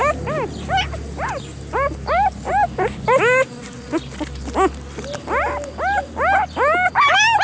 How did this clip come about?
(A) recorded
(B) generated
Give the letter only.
A